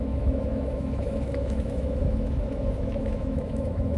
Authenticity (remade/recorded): remade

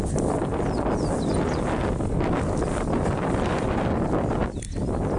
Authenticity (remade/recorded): recorded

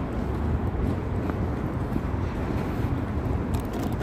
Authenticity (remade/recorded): recorded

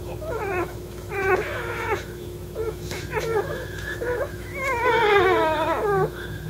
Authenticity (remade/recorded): remade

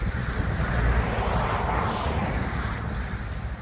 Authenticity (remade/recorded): recorded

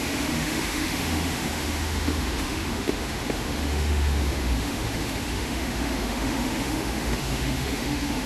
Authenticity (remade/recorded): remade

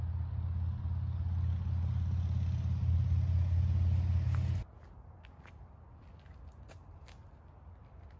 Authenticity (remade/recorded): recorded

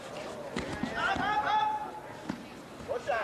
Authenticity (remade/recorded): recorded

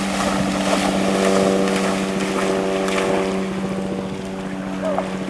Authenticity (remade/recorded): recorded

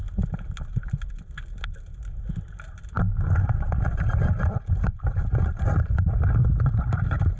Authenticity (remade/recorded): recorded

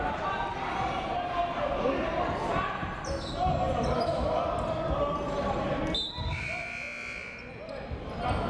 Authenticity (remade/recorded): recorded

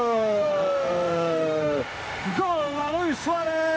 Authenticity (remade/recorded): remade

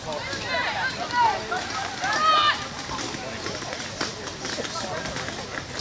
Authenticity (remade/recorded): recorded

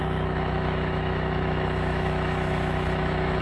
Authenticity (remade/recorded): remade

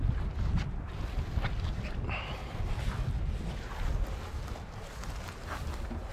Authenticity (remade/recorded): recorded